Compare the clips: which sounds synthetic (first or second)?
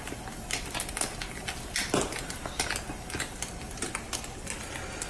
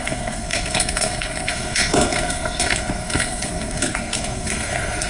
second